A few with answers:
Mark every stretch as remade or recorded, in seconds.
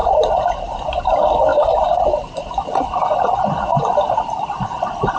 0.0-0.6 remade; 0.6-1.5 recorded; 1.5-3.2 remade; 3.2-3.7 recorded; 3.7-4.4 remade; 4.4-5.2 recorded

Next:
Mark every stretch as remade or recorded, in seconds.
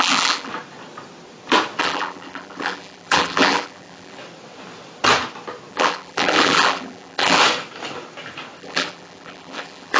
0.0-0.5 remade; 0.5-1.8 recorded; 1.8-4.2 remade; 4.2-5.7 recorded; 5.7-7.4 remade; 7.4-8.6 recorded; 8.6-10.0 remade